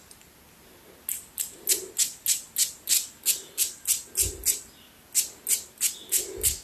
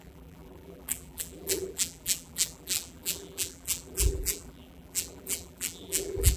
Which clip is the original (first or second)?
first